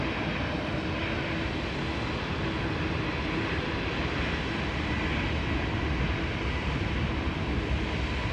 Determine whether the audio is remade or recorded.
recorded